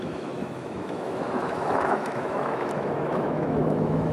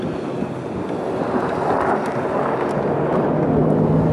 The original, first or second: second